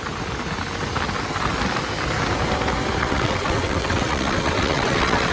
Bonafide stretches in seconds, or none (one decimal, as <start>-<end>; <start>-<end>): 0.0-3.0